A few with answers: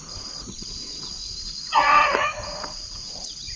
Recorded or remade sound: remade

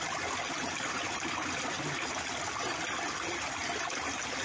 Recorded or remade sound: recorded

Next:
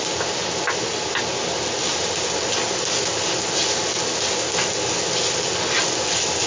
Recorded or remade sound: recorded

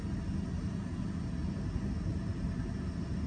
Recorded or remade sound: recorded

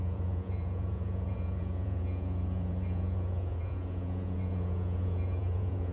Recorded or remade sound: remade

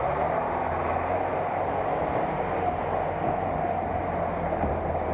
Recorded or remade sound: recorded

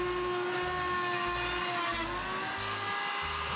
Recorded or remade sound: recorded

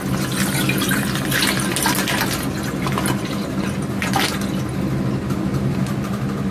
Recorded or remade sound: recorded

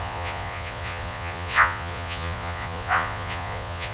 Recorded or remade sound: remade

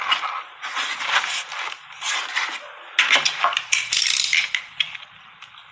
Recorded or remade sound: recorded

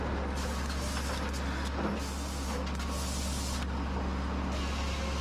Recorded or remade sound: recorded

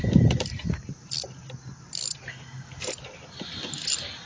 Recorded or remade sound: recorded